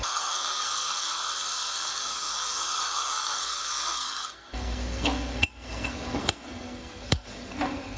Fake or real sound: fake